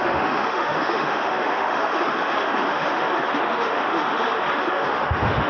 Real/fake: fake